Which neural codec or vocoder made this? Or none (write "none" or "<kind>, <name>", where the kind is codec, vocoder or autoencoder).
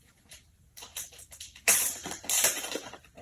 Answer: vocoder, BigVGAN v2